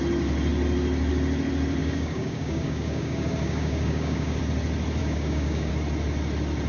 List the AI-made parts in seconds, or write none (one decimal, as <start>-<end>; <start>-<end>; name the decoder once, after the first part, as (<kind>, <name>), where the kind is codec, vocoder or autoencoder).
1.8-4.4 (codec, DAC); 5.0-5.7